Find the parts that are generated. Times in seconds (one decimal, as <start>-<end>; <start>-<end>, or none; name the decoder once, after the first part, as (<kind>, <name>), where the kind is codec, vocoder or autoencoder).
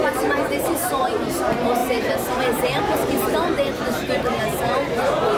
0.0-1.0 (vocoder, BigVGAN v2); 1.8-4.4